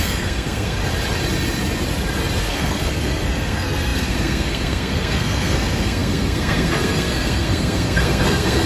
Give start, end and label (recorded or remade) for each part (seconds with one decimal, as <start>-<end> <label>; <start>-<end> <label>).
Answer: 0.0-0.8 remade; 0.8-2.4 recorded; 2.4-8.7 remade

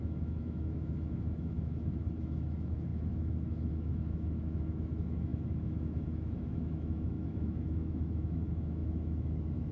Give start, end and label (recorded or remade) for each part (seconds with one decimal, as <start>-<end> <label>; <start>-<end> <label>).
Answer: 0.0-9.7 remade